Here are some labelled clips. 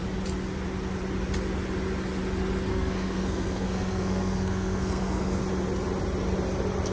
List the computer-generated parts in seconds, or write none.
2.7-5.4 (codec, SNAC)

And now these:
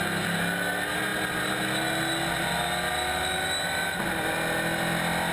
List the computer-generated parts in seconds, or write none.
none